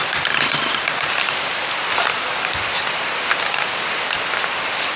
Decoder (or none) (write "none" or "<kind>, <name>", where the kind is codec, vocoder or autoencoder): none